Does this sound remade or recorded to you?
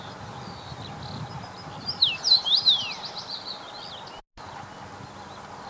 recorded